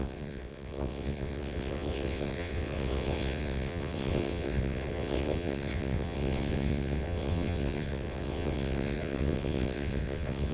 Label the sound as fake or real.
fake